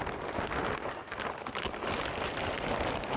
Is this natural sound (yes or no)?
yes